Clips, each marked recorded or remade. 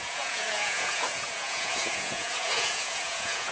remade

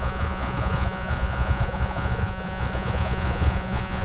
remade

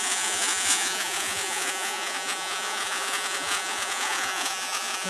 remade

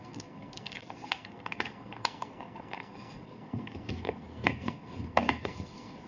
remade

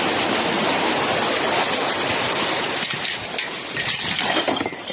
recorded